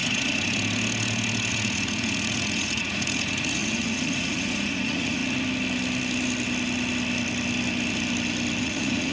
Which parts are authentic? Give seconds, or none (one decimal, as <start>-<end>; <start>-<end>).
0.0-1.5; 5.2-8.6